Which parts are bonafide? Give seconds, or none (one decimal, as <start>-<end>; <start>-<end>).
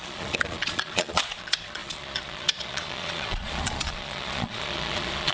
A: none